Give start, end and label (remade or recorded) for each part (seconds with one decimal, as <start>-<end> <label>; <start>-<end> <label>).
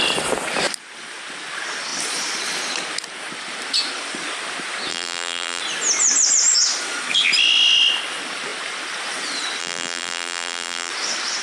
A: 0.0-4.9 recorded; 4.9-5.6 remade; 5.6-9.6 recorded; 9.6-10.9 remade; 10.9-11.4 recorded